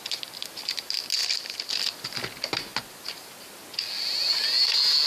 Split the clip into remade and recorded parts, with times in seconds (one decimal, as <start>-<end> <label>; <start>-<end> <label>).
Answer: 0.0-1.2 recorded; 1.2-1.7 remade; 1.7-2.7 recorded; 2.7-3.4 remade; 3.4-5.1 recorded